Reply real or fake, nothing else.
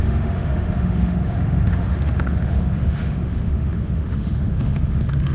fake